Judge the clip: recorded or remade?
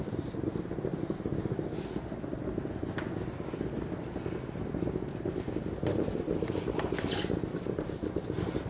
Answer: recorded